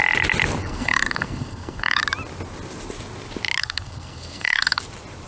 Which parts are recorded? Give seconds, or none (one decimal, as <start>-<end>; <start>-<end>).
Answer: 0.0-0.6; 2.0-3.6; 4.8-5.3